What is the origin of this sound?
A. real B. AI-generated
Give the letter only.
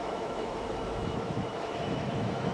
B